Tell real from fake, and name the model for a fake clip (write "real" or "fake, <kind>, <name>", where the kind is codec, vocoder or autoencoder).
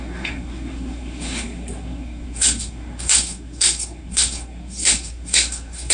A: fake, codec, SNAC